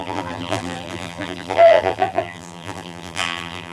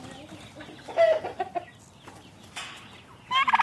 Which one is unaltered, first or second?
second